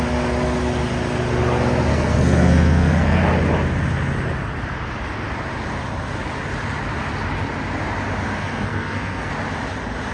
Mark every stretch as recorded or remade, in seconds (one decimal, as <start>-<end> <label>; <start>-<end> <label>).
0.0-1.9 recorded; 1.9-3.2 remade; 3.2-8.4 recorded; 8.4-9.3 remade; 9.3-10.1 recorded